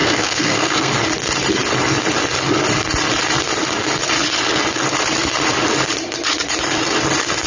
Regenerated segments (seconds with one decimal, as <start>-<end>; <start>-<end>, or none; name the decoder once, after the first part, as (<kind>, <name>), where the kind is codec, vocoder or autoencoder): 0.0-0.9 (codec, SNAC)